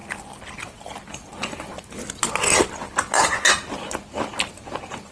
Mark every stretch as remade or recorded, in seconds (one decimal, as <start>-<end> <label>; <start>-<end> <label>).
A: 0.0-5.1 recorded